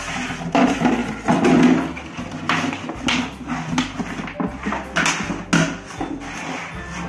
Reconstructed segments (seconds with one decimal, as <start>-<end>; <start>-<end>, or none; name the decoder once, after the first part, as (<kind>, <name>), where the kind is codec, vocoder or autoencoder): none